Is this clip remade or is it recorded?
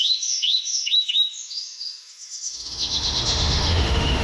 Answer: remade